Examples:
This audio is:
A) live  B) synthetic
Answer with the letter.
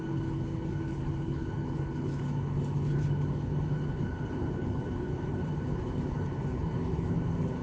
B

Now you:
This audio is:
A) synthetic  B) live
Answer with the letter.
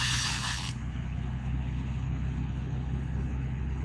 A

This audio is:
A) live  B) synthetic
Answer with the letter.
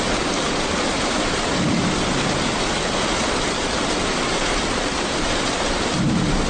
A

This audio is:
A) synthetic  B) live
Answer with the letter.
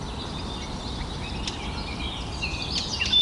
B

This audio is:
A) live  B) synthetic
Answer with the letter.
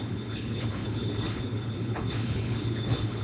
B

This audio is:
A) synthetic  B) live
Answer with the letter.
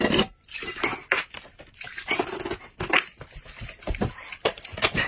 B